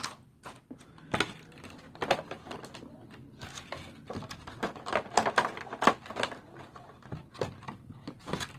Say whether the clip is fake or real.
real